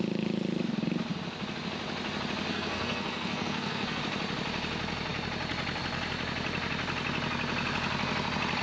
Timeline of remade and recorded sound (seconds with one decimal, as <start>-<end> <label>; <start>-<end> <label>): 0.0-2.5 recorded; 2.5-4.0 remade; 4.0-8.6 recorded